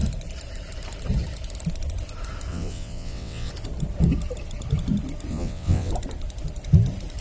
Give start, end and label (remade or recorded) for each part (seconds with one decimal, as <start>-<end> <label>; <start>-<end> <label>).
0.0-2.5 recorded; 2.5-3.5 remade; 3.5-5.3 recorded; 5.3-5.9 remade; 5.9-7.2 recorded